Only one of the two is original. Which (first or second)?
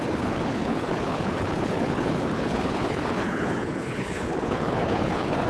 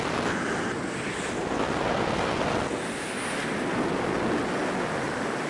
second